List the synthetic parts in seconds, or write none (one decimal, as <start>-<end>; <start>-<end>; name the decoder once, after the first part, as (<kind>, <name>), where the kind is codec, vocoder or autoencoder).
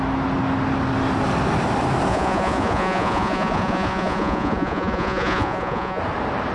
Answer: 2.1-6.0 (vocoder, Vocos)